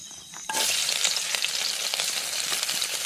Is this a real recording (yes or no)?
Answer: no